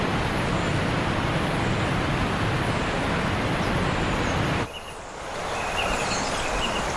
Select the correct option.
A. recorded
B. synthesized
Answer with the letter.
A